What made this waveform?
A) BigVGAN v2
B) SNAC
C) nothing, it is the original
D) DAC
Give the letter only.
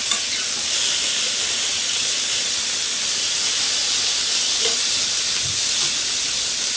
C